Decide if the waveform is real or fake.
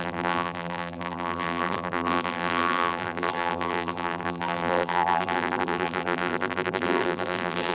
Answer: fake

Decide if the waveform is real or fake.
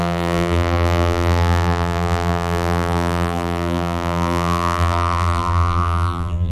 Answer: fake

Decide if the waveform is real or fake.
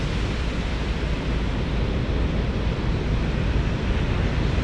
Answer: fake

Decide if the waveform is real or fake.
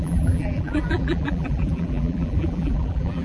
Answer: fake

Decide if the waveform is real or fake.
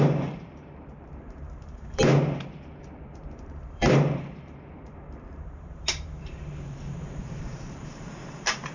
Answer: fake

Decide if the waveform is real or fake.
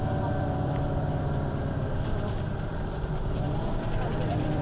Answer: fake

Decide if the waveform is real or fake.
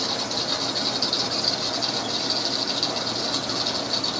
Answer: real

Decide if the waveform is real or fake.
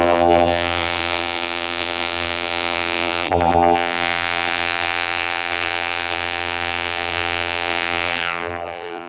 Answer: fake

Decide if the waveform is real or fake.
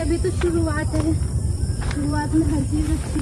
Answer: fake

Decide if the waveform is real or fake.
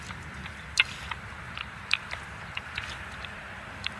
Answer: fake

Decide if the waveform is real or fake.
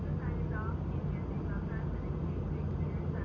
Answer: real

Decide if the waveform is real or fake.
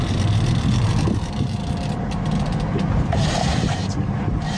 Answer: fake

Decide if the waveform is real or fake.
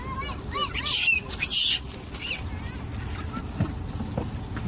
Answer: real